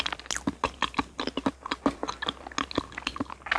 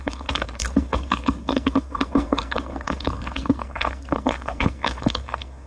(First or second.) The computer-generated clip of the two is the second